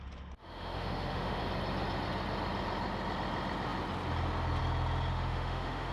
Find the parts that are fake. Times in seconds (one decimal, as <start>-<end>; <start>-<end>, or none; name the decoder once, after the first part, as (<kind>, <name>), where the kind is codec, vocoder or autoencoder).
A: 0.4-1.4 (autoencoder, DAC-VAE); 5.1-5.9